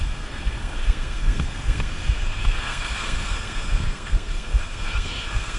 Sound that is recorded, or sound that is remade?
remade